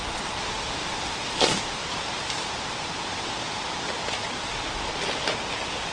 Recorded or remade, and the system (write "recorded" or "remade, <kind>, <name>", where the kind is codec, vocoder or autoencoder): recorded